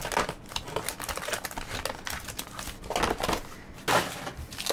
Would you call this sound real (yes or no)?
yes